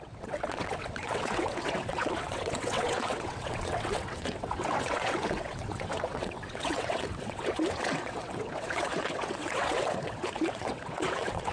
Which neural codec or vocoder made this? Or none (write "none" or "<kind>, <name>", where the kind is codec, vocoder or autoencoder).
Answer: vocoder, WaveNeXt